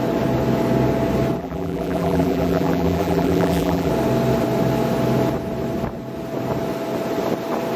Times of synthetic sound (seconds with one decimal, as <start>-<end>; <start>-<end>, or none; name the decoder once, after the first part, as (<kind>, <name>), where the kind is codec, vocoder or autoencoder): 1.4-3.9 (vocoder, BigVGAN v2)